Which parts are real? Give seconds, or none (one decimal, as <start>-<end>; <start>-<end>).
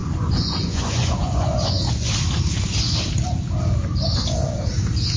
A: 2.1-5.2